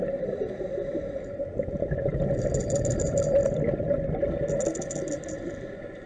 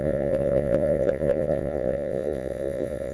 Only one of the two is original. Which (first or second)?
first